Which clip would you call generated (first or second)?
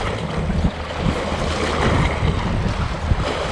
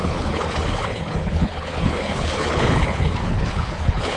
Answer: second